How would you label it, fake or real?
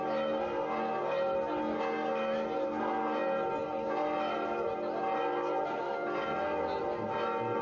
real